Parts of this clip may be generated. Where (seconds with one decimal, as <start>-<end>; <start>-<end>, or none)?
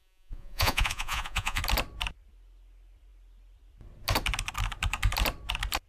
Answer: 0.0-1.6